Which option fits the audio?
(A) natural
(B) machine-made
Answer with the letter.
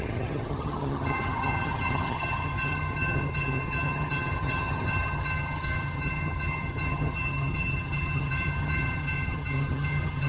B